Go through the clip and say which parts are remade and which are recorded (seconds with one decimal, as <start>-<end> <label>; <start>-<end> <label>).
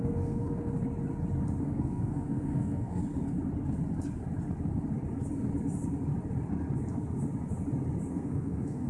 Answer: 0.0-0.7 remade; 0.7-1.6 recorded; 1.6-3.0 remade; 3.0-8.1 recorded; 8.1-8.9 remade